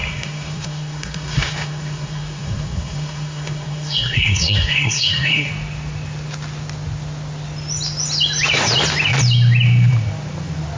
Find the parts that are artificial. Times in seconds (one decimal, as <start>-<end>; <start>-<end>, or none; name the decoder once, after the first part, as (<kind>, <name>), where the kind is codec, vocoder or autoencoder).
0.0-5.5 (codec, SNAC)